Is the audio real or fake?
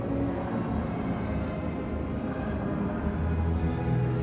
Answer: real